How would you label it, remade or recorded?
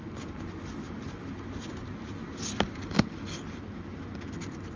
recorded